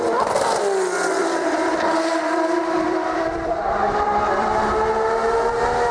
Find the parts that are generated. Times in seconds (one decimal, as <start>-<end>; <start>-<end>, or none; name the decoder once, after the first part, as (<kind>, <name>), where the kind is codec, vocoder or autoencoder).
1.2-4.7 (vocoder, BigVGAN v2)